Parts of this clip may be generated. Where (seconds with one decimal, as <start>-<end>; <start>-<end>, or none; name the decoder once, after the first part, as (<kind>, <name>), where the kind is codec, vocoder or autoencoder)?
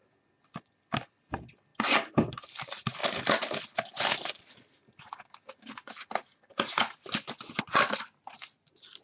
none